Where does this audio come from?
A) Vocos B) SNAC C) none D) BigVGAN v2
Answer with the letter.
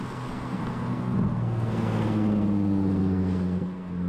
B